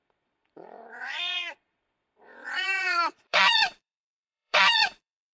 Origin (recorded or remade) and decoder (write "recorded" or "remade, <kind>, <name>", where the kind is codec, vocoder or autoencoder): remade, vocoder, Vocos